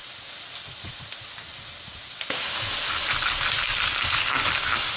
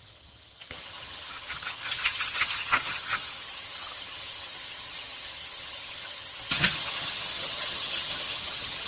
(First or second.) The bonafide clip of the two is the first